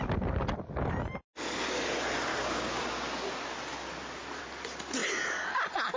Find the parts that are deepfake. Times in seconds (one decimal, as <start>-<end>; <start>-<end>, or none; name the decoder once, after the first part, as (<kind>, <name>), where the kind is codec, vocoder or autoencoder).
2.3-2.9 (codec, DAC)